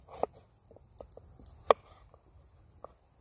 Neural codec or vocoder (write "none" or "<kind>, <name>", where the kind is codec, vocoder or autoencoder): none